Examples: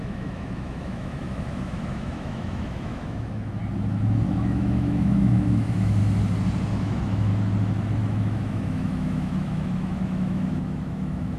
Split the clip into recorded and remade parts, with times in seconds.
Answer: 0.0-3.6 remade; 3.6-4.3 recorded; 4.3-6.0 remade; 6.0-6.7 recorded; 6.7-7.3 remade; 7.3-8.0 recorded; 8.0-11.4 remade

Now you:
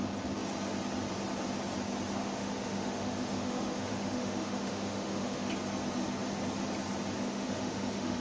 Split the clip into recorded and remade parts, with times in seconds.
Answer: 0.0-2.2 recorded; 2.2-5.5 remade; 5.5-7.2 recorded; 7.2-8.2 remade

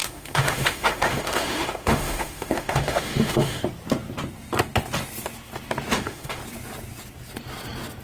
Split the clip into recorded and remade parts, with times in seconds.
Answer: 0.0-3.6 remade; 3.6-5.9 recorded; 5.9-6.4 remade; 6.4-8.0 recorded

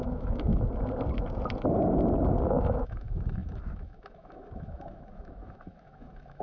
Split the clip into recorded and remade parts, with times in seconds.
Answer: 0.0-0.5 remade; 0.5-2.5 recorded; 2.5-6.4 remade

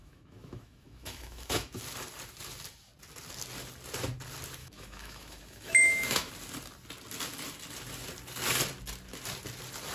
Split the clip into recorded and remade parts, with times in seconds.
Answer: 0.0-1.8 remade; 1.8-4.6 recorded; 4.6-6.3 remade; 6.3-9.9 recorded